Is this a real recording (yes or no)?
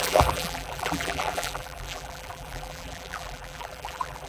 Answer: no